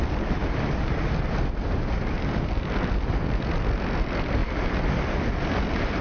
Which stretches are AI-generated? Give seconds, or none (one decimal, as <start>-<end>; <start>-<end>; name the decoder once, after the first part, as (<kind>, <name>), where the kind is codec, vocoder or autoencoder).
none